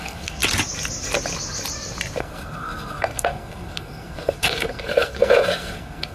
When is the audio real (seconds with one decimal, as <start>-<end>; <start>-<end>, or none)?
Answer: 0.4-2.2